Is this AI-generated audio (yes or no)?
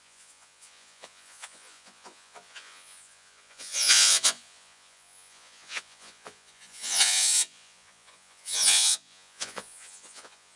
yes